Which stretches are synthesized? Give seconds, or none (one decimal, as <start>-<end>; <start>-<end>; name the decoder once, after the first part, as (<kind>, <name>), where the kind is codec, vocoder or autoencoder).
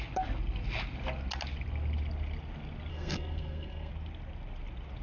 2.9-3.9 (codec, SNAC)